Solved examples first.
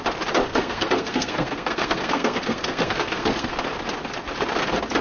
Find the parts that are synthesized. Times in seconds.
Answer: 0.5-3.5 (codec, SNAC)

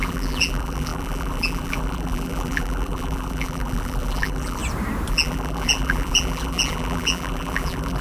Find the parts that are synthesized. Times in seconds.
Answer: 0.0-4.6 (vocoder, BigVGAN v2); 5.1-8.0

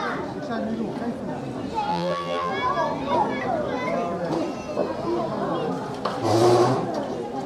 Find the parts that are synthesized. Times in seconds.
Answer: 1.9-2.5 (vocoder, BigVGAN v2)

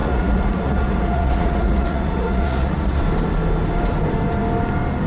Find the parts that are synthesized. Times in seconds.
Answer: 0.0-3.0 (vocoder, Vocos)

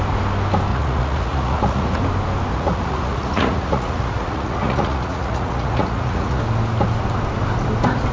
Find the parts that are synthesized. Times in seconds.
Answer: 0.7-2.0 (vocoder, Vocos); 2.5-6.4

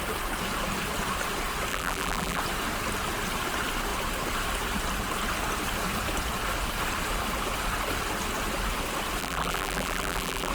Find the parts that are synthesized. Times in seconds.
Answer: 1.7-2.4 (vocoder, BigVGAN v2); 9.2-10.5

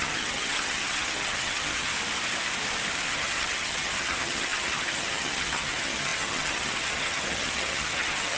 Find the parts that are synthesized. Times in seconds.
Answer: 0.0-1.9 (vocoder, HiFi-GAN); 3.1-8.4